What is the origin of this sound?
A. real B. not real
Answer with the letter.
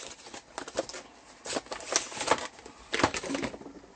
A